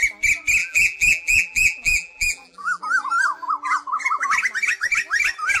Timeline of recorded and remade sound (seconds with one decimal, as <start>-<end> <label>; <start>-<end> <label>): 0.0-0.6 recorded; 0.6-2.8 remade; 2.8-5.6 recorded